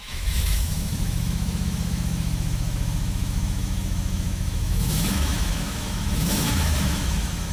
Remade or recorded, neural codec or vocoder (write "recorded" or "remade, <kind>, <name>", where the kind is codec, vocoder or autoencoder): remade, autoencoder, DAC-VAE